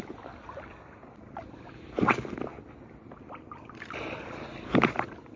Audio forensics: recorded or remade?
recorded